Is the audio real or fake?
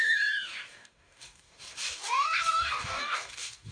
fake